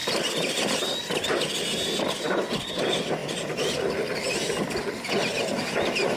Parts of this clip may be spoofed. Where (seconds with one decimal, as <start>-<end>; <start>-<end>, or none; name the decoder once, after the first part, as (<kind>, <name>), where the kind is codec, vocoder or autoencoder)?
none